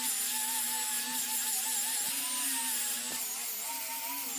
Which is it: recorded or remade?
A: recorded